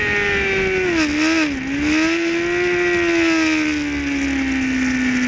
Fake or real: real